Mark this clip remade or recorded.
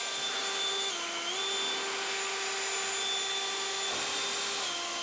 recorded